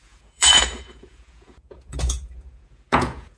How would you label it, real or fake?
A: fake